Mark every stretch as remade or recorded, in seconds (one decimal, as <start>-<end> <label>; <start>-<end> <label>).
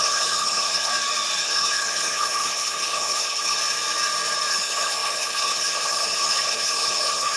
0.0-0.9 remade; 0.9-1.4 recorded; 1.4-3.6 remade; 3.6-4.5 recorded; 4.5-7.4 remade